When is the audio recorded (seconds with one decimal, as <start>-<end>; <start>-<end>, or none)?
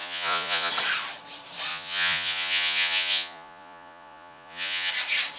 0.7-1.7; 4.9-5.4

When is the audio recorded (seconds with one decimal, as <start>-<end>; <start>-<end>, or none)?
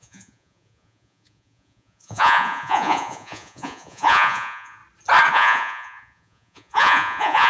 4.8-5.3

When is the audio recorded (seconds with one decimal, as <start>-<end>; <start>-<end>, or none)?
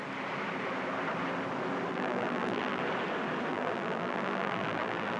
0.0-1.9; 2.8-3.5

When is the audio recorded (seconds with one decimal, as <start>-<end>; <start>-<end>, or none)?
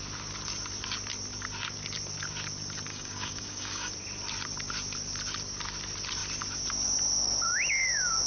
0.0-2.9; 3.9-8.3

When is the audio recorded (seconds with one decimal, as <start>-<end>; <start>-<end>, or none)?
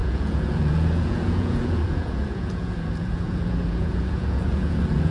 none